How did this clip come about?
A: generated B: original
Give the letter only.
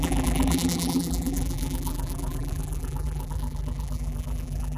A